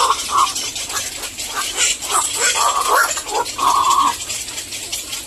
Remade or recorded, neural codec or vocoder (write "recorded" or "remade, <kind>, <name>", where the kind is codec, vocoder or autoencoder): recorded